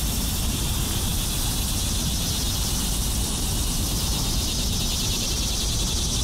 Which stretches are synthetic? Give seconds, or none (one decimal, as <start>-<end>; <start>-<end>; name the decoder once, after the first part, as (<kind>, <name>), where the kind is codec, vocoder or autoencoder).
0.0-1.1 (vocoder, BigVGAN v2); 4.8-6.2